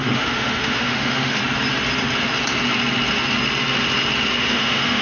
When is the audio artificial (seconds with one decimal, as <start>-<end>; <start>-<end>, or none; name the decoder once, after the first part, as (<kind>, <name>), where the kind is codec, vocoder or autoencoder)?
0.0-1.4 (autoencoder, DAC-VAE); 4.4-5.0